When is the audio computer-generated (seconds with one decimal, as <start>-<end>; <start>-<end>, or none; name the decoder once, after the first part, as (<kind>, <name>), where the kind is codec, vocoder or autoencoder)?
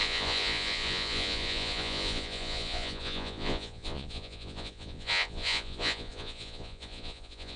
0.0-7.6 (vocoder, Vocos)